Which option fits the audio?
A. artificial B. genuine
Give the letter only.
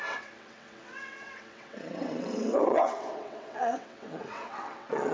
A